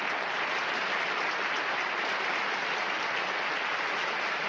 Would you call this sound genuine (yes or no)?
yes